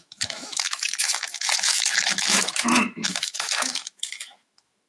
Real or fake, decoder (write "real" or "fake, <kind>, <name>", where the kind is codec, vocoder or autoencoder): fake, autoencoder, DAC-VAE